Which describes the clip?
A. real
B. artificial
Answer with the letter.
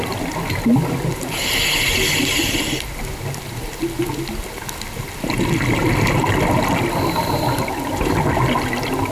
A